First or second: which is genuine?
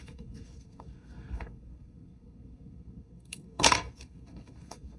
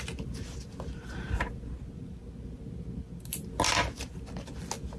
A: second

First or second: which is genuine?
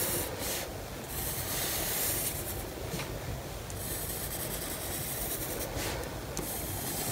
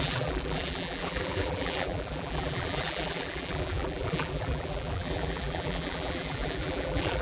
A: first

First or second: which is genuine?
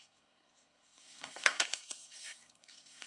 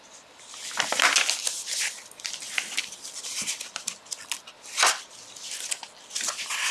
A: second